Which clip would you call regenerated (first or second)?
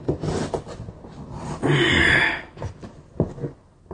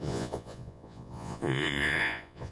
second